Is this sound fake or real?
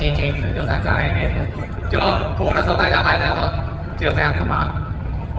fake